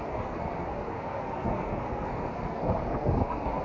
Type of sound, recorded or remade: remade